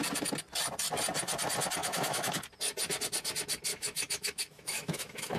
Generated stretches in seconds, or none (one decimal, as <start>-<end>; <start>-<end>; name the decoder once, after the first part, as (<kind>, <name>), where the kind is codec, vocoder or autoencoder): 1.8-2.4 (autoencoder, DAC-VAE); 3.7-5.4